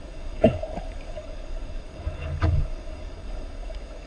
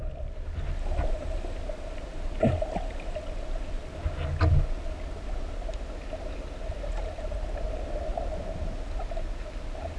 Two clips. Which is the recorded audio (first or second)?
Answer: second